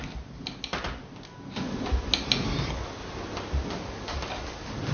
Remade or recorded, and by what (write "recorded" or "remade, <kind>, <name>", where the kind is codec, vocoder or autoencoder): recorded